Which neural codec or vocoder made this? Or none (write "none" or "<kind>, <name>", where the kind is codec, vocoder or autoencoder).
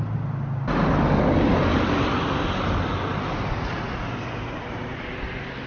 none